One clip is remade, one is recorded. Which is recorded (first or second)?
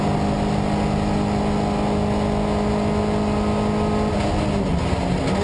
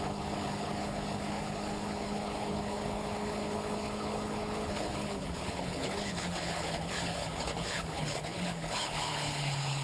first